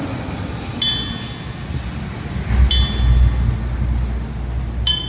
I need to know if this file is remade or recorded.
recorded